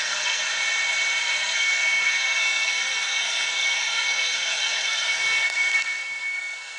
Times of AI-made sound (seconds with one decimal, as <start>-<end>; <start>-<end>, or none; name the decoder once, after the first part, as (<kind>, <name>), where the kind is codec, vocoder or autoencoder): 0.0-0.4 (codec, SNAC); 1.2-6.8